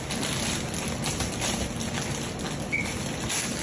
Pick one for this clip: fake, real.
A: real